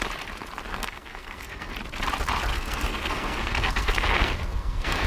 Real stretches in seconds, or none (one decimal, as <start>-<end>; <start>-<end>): 0.0-0.7; 1.7-2.5